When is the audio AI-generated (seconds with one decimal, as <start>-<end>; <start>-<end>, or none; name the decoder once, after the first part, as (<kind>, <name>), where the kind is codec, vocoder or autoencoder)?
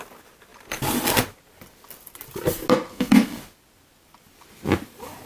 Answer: 2.9-3.4 (codec, SNAC)